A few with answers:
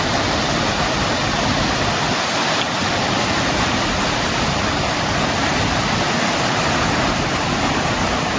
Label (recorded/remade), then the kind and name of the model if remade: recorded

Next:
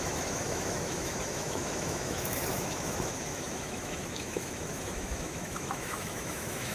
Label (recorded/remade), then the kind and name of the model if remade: remade, autoencoder, DAC-VAE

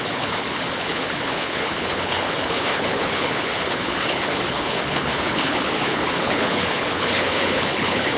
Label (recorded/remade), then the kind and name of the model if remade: remade, codec, HILCodec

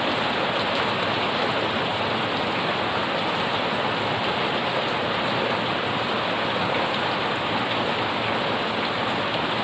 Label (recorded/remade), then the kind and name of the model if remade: recorded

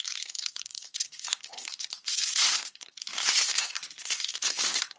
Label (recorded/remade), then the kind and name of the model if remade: remade, codec, SNAC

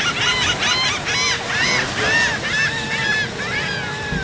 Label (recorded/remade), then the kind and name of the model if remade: recorded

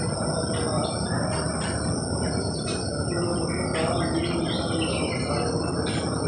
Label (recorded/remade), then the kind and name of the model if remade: recorded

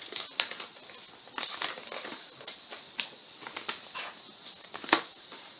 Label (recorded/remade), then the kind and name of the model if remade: recorded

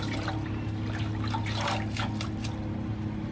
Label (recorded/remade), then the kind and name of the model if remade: recorded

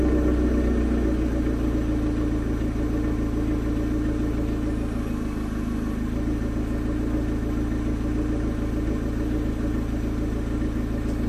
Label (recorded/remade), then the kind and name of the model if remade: recorded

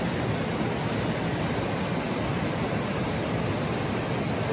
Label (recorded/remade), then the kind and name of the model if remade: recorded